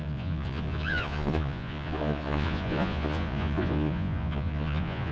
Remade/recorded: remade